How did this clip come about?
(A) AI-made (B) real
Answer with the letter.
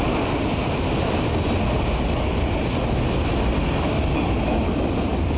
B